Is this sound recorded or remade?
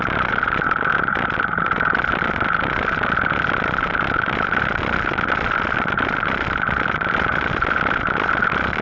recorded